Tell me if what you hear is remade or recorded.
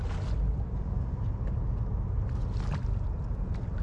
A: recorded